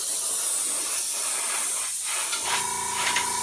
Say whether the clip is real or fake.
real